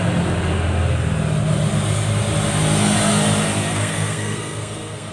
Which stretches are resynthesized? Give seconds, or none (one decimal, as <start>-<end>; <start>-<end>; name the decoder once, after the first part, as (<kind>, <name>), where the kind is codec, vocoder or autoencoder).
3.7-5.1 (codec, SNAC)